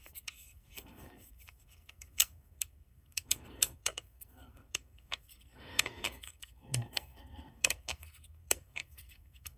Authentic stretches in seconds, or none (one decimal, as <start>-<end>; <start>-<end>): none